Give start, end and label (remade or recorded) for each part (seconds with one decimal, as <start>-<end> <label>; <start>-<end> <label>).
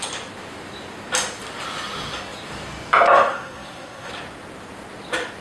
0.0-3.3 recorded; 3.3-4.1 remade; 4.1-5.4 recorded